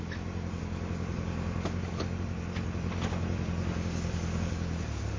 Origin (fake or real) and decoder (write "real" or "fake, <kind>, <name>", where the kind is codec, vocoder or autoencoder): real